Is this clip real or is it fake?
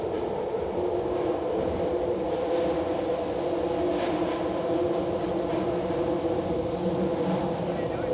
real